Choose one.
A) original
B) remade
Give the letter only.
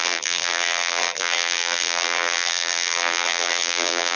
B